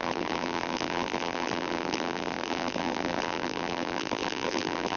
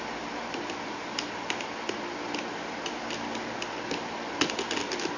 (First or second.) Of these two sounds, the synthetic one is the first